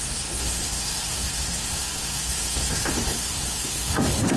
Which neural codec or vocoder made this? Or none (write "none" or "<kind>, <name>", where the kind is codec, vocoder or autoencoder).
codec, SNAC